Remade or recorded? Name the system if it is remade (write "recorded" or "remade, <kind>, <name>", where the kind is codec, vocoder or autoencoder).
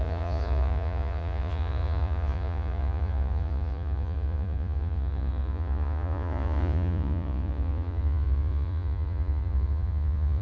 remade, vocoder, Vocos